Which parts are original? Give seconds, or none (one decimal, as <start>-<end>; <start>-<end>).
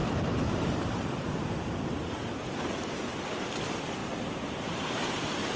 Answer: 1.7-4.0